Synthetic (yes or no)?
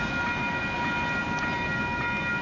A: no